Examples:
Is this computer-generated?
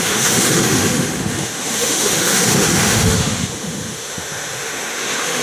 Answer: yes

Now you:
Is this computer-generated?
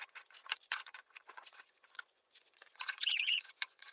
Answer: yes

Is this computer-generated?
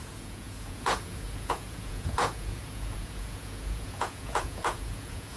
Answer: yes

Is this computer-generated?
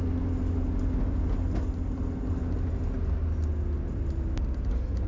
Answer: no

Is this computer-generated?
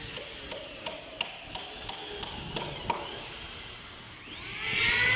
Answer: no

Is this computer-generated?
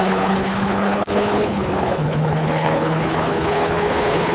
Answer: yes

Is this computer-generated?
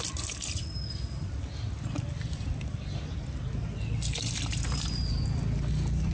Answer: no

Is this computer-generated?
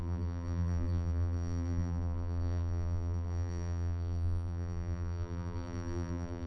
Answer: yes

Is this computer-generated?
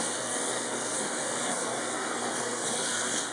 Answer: yes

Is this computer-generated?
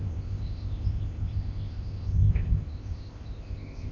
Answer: yes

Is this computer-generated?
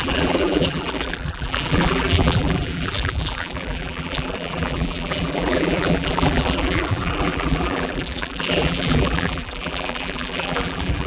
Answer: yes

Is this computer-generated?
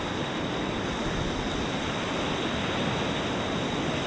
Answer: no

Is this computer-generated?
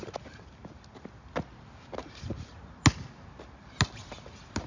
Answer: no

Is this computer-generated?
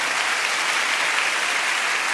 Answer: no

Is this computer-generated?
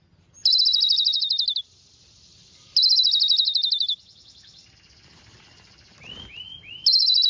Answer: no